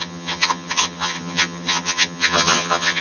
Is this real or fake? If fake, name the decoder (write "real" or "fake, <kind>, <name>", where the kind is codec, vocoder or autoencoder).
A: fake, vocoder, HiFi-GAN